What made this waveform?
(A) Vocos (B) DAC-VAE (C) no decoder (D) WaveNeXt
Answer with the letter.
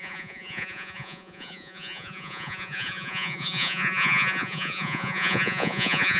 A